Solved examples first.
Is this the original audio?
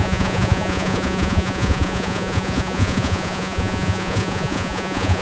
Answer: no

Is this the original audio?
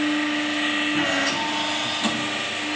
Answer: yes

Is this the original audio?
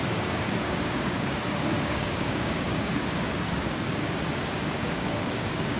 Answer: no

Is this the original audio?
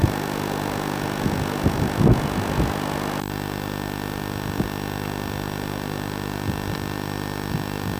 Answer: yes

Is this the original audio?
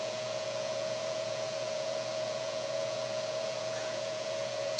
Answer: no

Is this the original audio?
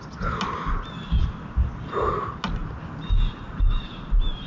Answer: yes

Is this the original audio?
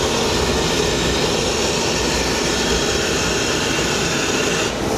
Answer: yes